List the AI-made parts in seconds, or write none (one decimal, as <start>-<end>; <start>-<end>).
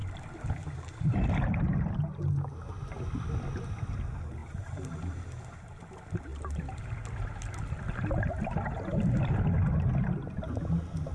none